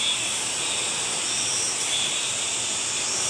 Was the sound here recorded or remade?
recorded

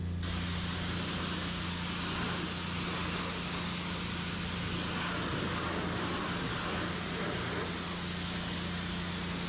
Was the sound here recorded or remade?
recorded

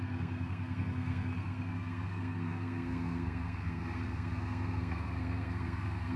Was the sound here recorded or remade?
remade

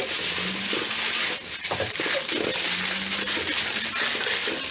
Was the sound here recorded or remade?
recorded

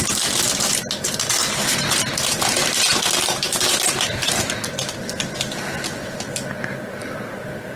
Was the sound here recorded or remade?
recorded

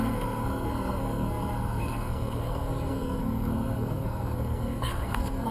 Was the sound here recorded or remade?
remade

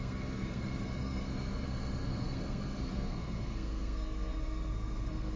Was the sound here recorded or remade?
remade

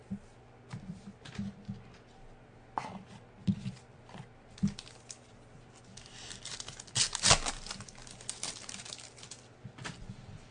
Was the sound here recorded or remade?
recorded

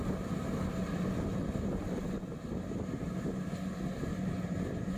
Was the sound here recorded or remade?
recorded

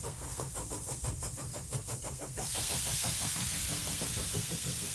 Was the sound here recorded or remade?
remade